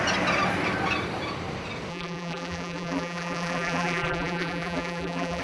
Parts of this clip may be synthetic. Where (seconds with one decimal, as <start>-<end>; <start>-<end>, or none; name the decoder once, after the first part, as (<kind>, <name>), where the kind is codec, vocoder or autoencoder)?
1.9-5.4 (vocoder, BigVGAN v2)